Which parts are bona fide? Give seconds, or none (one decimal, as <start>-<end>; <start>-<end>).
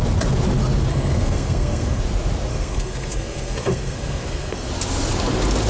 0.0-0.9; 2.0-2.5; 4.7-5.7